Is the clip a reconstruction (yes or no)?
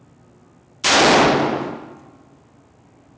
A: no